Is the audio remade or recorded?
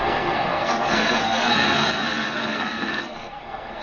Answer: remade